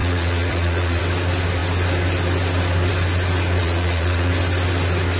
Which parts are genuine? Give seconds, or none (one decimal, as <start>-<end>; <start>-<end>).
1.0-3.6; 4.3-5.2